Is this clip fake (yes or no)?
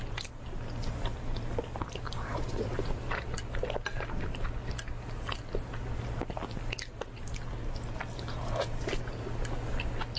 no